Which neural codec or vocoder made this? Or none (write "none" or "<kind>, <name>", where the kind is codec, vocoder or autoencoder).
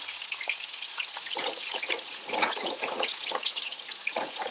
vocoder, Vocos